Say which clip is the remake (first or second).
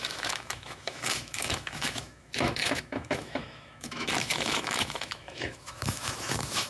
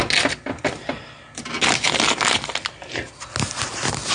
first